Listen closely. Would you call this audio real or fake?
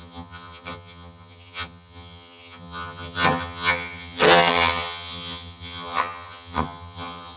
fake